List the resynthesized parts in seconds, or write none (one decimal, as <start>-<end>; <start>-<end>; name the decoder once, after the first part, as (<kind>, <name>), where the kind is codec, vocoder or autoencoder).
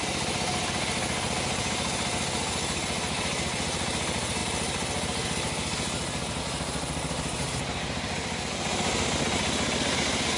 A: none